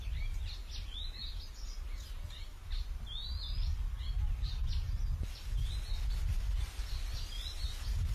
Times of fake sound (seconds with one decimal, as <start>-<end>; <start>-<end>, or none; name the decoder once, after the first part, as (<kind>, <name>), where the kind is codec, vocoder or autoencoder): none